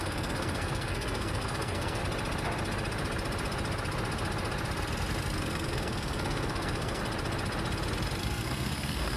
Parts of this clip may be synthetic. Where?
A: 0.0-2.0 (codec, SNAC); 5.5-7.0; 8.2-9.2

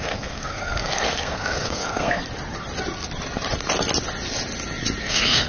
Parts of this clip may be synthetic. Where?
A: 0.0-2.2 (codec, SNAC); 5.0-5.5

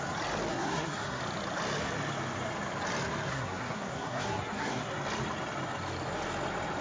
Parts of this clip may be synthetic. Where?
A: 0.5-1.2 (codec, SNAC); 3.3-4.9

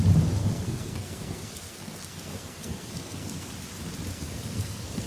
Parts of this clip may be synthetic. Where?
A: 0.4-3.5 (codec, SNAC); 4.1-5.1

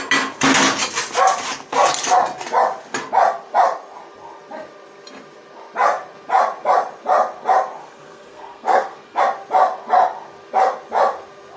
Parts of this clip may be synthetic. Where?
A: 7.8-9.2 (codec, SNAC)

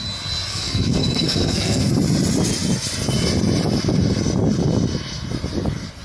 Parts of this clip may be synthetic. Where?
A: 0.5-1.9 (codec, SNAC)